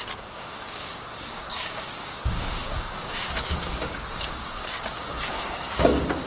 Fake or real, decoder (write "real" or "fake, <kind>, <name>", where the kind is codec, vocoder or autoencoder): fake, codec, DAC